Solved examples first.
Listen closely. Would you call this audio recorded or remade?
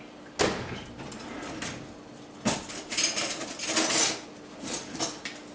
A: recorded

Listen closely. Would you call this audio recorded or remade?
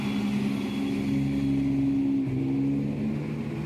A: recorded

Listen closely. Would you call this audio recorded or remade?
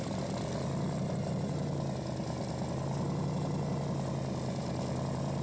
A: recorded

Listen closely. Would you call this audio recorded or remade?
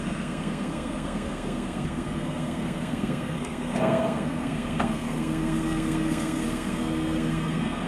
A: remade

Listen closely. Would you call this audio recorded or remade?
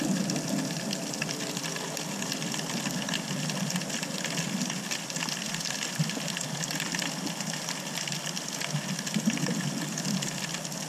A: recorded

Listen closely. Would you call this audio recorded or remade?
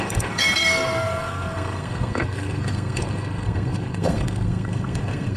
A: remade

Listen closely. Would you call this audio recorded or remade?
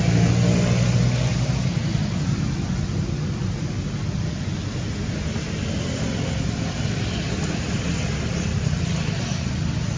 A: recorded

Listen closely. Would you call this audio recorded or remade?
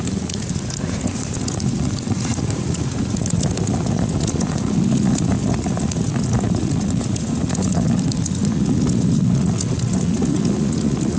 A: remade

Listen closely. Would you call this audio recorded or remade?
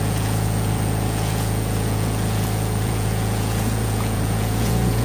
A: remade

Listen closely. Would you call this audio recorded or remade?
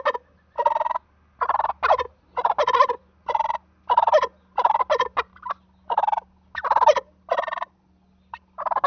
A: recorded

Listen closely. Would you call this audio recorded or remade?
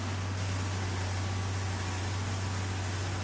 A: recorded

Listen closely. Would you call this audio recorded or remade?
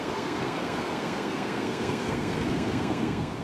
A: remade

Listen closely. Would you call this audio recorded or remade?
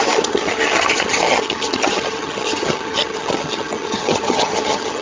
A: remade